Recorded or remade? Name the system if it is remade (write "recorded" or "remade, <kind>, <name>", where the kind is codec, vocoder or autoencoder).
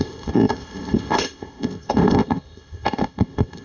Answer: remade, codec, ZipCodec